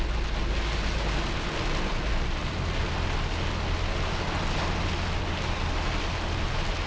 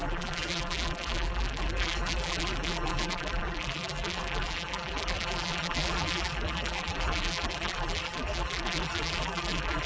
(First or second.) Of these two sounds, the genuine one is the first